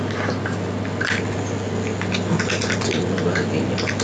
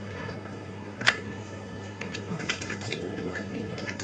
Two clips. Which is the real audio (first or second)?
first